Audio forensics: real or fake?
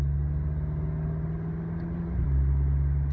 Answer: real